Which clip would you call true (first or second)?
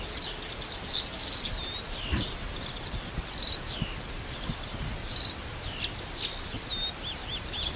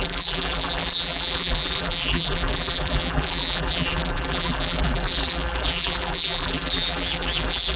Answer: first